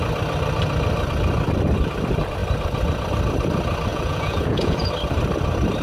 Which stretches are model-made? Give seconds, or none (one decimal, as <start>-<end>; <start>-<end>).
3.9-4.9